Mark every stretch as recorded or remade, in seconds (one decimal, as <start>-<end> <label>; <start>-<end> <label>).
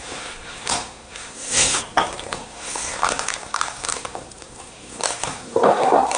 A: 0.0-6.2 remade